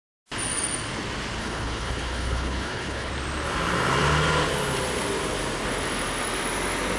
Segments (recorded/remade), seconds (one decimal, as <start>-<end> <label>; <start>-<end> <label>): 0.0-1.4 recorded; 1.4-3.1 remade; 3.1-7.0 recorded